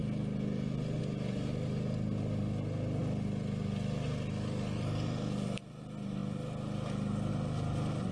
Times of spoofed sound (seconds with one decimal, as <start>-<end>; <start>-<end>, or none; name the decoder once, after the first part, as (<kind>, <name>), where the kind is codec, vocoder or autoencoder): none